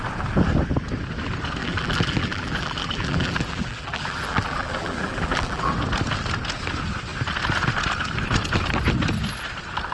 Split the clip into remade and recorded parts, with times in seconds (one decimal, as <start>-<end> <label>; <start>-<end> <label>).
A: 0.0-1.6 recorded; 1.6-5.7 remade; 5.7-9.9 recorded